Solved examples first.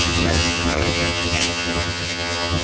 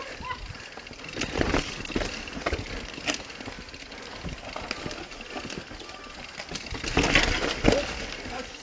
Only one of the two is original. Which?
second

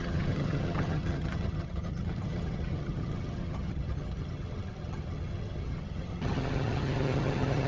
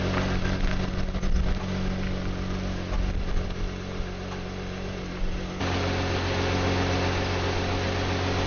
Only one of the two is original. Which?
second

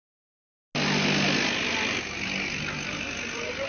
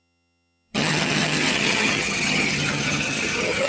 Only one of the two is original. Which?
first